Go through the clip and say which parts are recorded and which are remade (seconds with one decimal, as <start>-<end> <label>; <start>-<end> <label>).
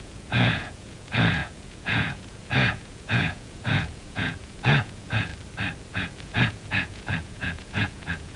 0.0-5.3 remade; 5.3-5.9 recorded; 5.9-8.4 remade